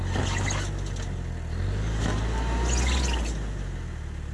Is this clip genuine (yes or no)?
yes